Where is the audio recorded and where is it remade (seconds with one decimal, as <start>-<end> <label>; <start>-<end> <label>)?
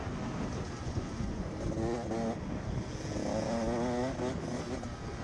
0.0-0.8 recorded; 0.8-1.5 remade; 1.5-5.2 recorded